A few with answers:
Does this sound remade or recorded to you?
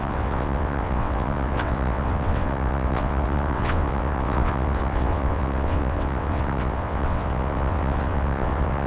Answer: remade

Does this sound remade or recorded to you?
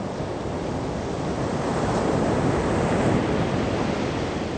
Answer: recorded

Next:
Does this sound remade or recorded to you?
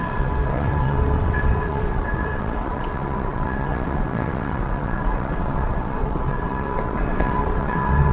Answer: remade